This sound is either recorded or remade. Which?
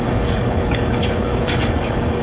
remade